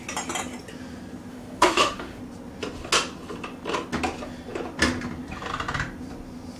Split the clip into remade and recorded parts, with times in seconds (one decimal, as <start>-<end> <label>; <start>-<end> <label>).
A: 0.0-1.3 recorded; 1.3-2.2 remade; 2.2-6.6 recorded